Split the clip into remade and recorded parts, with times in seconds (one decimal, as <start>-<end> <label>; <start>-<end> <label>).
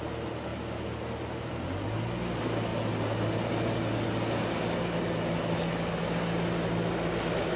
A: 0.0-7.6 recorded